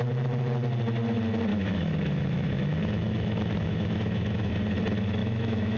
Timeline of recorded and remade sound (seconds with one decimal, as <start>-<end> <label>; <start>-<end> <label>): 0.0-1.5 recorded; 1.5-4.5 remade; 4.5-5.2 recorded; 5.2-5.8 remade